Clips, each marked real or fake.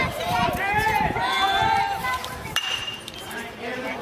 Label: fake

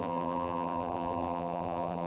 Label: fake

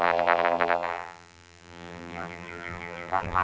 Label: fake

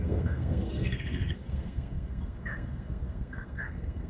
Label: fake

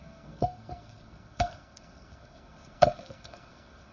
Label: fake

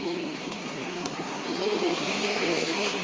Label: fake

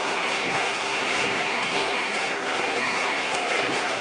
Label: fake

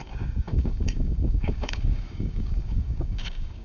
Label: fake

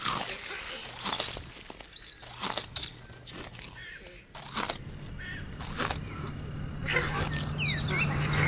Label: real